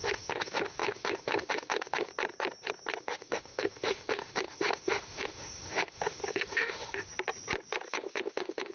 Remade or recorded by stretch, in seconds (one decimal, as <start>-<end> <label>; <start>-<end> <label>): 0.0-2.1 remade; 2.1-3.0 recorded; 3.0-7.1 remade; 7.1-7.9 recorded; 7.9-8.7 remade